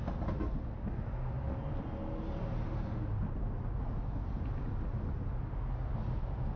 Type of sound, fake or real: real